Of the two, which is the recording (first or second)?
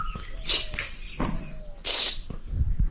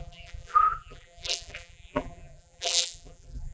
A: first